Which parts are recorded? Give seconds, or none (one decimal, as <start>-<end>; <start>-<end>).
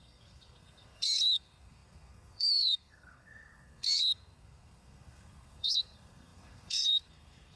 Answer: none